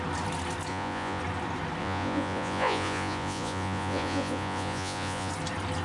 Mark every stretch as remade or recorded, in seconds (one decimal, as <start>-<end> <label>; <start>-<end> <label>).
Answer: 0.0-0.7 recorded; 0.7-1.2 remade; 1.2-1.8 recorded; 1.8-5.3 remade; 5.3-5.8 recorded